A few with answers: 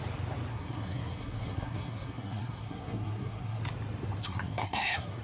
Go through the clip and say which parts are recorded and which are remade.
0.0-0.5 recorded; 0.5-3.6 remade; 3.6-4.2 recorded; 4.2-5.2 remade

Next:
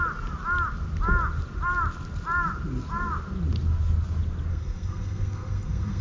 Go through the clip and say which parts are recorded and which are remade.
0.0-4.5 recorded; 4.5-6.0 remade

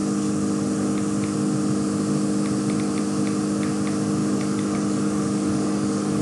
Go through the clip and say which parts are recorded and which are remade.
0.0-4.2 recorded; 4.2-6.2 remade